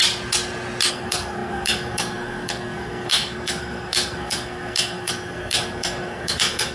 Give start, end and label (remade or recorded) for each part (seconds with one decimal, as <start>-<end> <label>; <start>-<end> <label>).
0.0-0.9 recorded; 0.9-6.7 remade